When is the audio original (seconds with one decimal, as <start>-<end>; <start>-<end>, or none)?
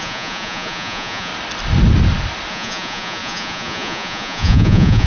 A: 1.3-2.5